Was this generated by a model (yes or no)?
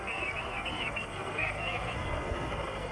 yes